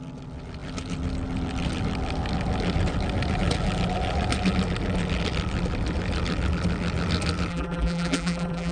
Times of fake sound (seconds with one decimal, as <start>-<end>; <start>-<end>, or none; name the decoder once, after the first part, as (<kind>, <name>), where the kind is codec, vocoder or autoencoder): 7.5-8.7 (vocoder, BigVGAN v2)